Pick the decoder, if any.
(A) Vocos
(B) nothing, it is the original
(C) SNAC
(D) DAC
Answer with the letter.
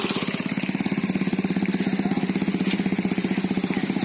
B